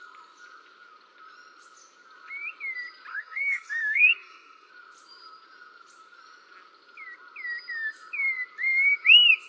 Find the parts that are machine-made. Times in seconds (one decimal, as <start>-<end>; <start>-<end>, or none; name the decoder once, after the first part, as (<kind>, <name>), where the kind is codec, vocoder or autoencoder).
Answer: 3.1-4.7 (codec, SNAC)